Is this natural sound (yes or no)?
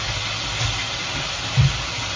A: yes